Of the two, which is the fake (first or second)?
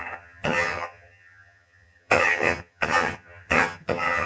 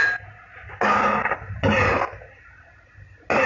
first